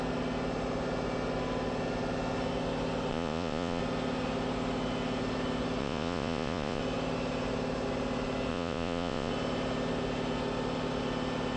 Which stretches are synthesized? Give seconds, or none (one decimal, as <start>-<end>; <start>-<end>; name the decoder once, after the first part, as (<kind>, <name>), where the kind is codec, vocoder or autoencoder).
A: 3.1-3.8 (vocoder, Vocos); 5.8-6.8; 8.5-9.3